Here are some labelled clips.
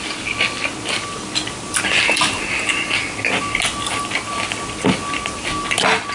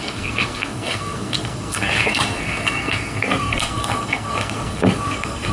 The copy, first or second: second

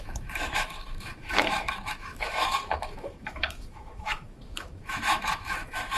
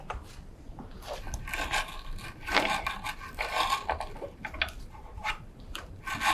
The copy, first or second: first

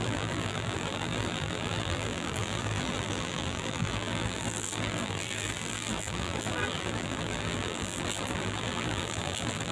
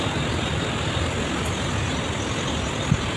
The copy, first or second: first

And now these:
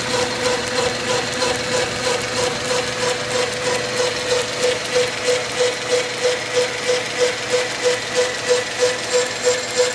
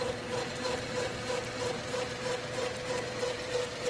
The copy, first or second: second